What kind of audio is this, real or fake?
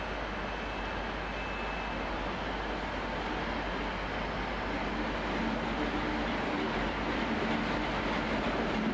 real